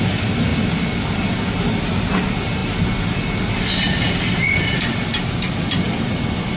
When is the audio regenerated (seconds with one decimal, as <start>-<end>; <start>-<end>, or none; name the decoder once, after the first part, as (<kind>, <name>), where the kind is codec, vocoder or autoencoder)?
none